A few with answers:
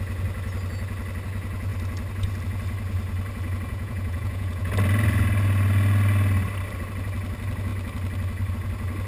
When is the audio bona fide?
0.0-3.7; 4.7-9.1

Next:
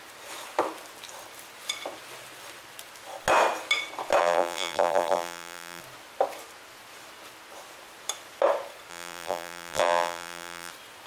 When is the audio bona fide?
0.0-4.2; 5.8-8.9; 10.7-11.1

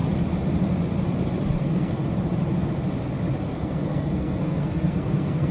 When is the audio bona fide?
0.0-1.5; 2.0-3.4

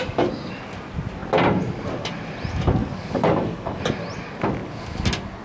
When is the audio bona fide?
0.0-2.8; 3.8-5.4

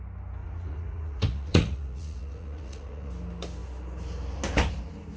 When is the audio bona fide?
0.0-0.4; 3.1-5.2